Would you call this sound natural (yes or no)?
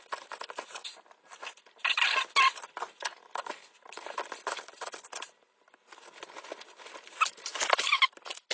yes